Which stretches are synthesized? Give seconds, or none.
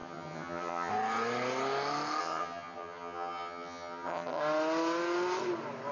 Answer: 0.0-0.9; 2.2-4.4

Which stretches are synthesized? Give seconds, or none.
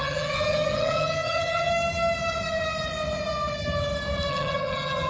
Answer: 0.0-1.7; 4.3-5.1